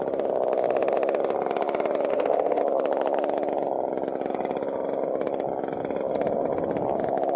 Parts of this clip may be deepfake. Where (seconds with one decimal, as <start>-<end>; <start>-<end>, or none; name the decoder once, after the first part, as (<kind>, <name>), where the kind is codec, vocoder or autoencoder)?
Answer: 2.1-2.6 (autoencoder, DAC-VAE)